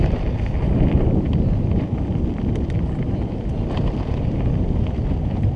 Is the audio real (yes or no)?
yes